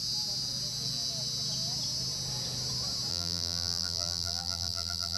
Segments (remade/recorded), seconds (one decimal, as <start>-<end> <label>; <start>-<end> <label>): 0.0-3.1 recorded; 3.1-5.2 remade